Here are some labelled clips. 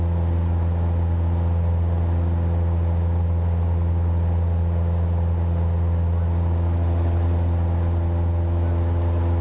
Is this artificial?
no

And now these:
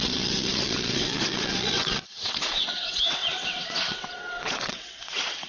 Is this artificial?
yes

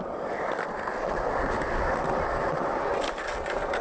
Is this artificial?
no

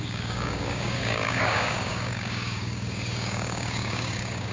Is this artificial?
yes